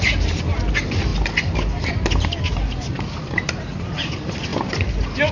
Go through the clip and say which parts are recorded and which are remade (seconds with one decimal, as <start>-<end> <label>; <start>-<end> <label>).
0.0-5.3 recorded